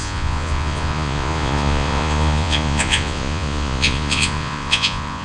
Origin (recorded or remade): remade